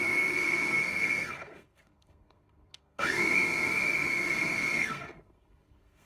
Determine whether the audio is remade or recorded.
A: remade